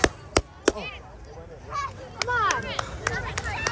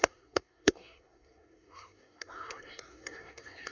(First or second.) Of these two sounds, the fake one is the second